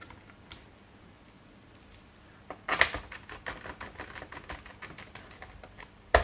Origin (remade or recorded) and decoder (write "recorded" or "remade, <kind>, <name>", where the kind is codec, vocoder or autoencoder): recorded